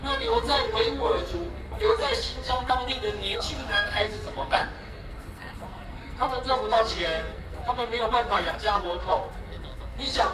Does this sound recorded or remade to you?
remade